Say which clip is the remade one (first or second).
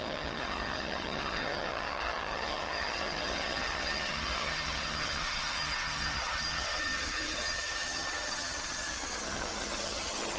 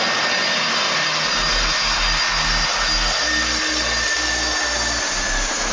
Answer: first